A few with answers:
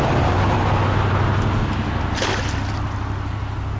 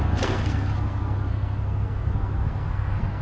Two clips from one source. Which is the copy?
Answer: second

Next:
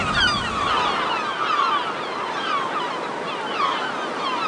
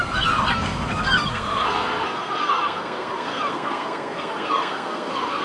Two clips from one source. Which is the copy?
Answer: second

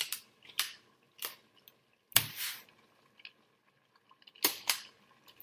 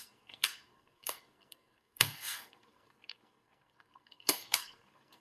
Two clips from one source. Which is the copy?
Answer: second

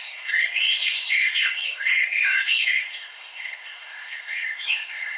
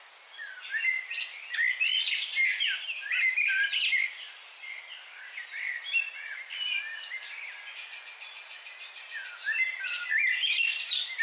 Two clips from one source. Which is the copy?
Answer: first